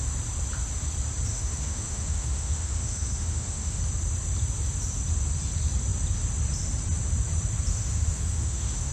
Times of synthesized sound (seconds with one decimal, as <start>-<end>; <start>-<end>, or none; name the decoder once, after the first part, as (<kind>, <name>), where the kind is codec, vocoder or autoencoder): 1.3-3.8 (autoencoder, DAC-VAE); 7.7-8.9